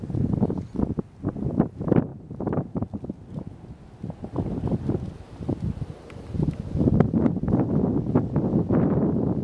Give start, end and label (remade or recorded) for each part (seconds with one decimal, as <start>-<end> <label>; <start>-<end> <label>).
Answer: 0.0-2.1 recorded; 2.1-2.8 remade; 2.8-9.4 recorded

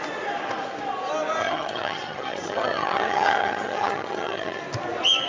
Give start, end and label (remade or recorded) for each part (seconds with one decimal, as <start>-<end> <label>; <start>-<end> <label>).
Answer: 0.0-1.4 recorded; 1.4-4.6 remade; 4.6-5.3 recorded

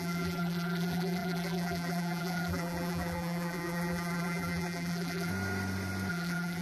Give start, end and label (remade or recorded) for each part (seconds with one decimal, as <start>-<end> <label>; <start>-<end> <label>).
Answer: 0.0-5.3 remade; 5.3-6.1 recorded; 6.1-6.6 remade

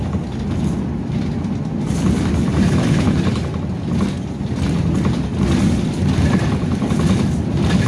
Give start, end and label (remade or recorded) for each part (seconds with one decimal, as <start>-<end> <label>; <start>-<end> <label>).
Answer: 0.0-7.9 recorded

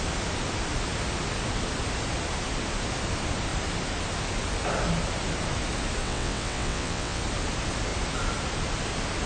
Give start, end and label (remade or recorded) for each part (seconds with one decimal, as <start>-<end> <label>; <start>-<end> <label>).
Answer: 0.0-6.0 recorded; 6.0-7.2 remade; 7.2-9.3 recorded

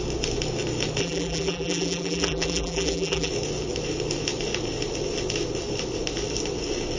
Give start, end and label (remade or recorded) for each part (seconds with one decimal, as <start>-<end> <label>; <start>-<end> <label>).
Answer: 0.0-1.0 recorded; 1.0-3.3 remade; 3.3-7.0 recorded